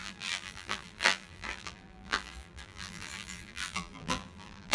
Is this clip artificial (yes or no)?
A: yes